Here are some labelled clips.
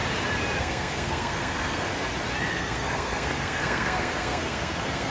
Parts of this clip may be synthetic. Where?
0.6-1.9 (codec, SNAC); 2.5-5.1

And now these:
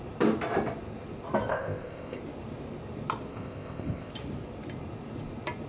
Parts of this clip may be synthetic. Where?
1.5-2.2 (codec, ZipCodec); 3.3-4.1

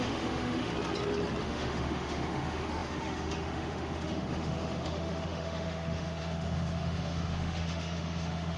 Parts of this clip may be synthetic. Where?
0.0-0.7 (autoencoder, DAC-VAE); 1.4-8.6

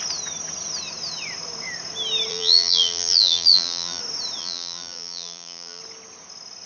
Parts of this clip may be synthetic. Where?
2.3-4.0 (vocoder, BigVGAN v2); 4.4-5.8

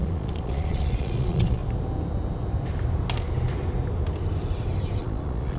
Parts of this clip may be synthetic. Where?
0.0-1.6 (vocoder, Vocos); 5.0-5.6

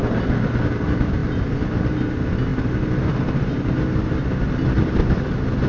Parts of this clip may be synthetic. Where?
none

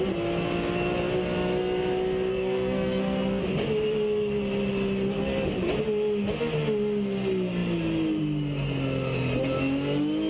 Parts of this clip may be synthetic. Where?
2.3-3.4 (codec, SNAC)

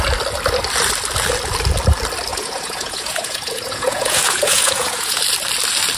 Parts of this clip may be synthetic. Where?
2.3-5.2 (vocoder, Vocos)